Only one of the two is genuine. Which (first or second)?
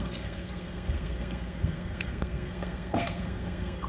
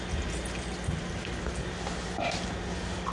second